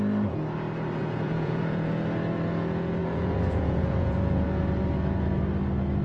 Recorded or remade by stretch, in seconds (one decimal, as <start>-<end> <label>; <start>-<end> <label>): 0.0-1.0 recorded; 1.0-1.9 remade; 1.9-3.0 recorded; 3.0-4.6 remade; 4.6-6.0 recorded